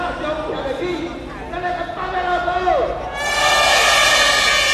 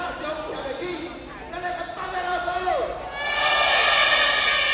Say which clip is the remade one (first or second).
second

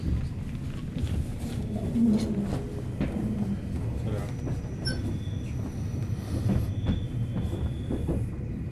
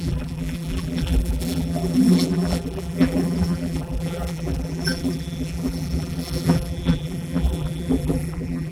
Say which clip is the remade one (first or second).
second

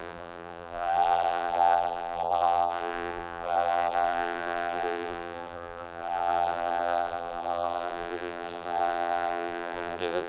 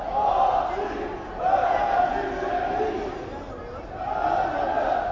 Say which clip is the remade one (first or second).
first